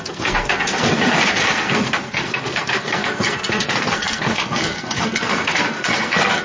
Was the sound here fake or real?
fake